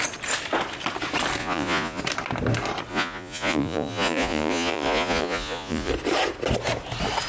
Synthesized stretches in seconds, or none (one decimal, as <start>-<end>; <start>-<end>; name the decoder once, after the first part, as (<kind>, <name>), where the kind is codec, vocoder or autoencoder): 1.4-2.0 (vocoder, Vocos); 2.9-5.9